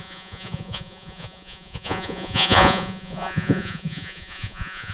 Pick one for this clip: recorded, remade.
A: remade